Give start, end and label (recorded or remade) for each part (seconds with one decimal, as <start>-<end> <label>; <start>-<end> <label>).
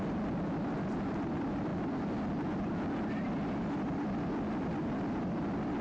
0.0-5.8 recorded